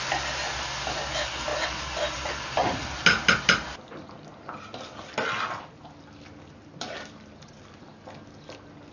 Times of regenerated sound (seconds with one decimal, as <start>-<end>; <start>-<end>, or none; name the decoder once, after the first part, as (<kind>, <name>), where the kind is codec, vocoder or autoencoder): none

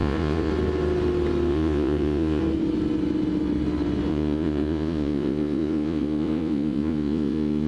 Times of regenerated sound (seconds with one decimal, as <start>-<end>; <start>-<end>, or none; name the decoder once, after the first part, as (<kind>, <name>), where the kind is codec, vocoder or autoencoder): 0.0-0.5 (vocoder, Vocos); 1.5-2.4; 4.1-7.7

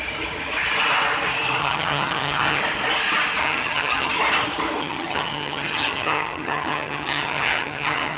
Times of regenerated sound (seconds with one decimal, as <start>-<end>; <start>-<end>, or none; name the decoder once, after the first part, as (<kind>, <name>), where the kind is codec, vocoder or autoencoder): 1.6-2.6 (vocoder, HiFi-GAN); 3.4-4.1; 4.8-8.2

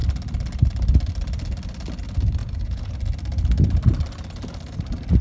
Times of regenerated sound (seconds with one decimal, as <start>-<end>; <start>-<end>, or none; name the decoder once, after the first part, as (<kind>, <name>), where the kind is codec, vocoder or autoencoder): 2.4-2.9 (vocoder, Vocos)

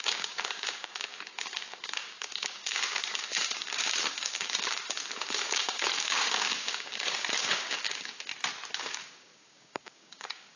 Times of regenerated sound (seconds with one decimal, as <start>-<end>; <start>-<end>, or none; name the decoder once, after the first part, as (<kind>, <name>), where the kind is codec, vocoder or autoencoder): 0.0-8.3 (codec, DAC); 8.8-10.6

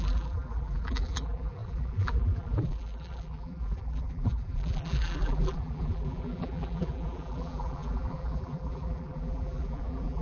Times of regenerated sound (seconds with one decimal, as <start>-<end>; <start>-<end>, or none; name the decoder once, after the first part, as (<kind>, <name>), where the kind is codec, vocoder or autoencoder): 0.0-10.2 (vocoder, BigVGAN v2)

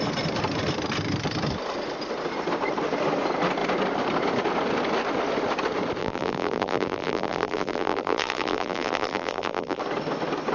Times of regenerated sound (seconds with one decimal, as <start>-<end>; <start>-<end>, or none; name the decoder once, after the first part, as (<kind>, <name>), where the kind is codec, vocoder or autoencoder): 6.0-9.8 (vocoder, BigVGAN v2)

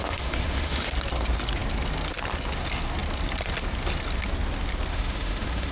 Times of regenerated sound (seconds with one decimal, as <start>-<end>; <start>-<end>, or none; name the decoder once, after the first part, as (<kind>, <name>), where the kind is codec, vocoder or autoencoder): 0.0-0.9 (autoencoder, DAC-VAE); 4.9-5.7